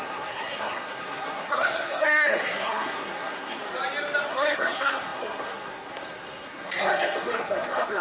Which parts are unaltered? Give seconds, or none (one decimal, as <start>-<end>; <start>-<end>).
3.6-4.3